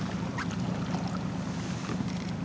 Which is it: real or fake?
real